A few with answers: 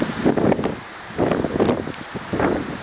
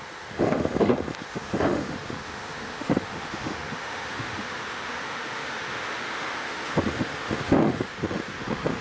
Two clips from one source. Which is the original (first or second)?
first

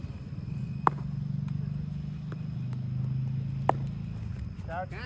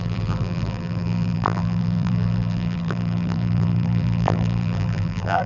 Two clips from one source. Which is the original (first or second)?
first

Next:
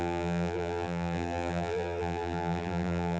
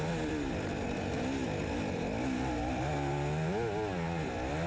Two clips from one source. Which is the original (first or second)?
second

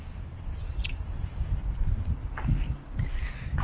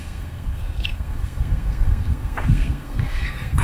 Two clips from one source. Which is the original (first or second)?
first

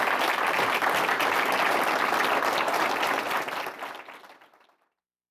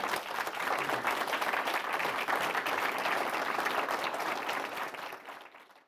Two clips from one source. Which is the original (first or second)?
first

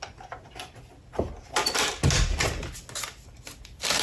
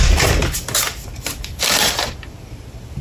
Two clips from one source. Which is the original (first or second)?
first